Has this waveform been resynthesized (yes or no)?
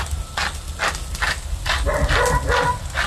no